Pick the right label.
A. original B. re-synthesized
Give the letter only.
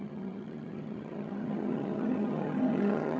B